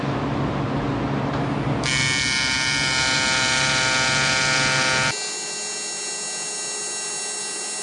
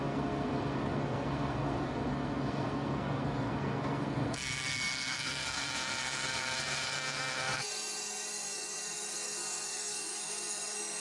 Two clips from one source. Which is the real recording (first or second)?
first